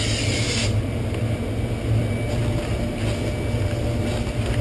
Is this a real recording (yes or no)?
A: yes